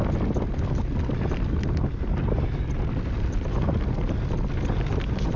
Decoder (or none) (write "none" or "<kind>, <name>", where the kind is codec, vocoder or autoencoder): none